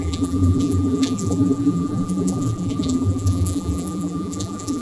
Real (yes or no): no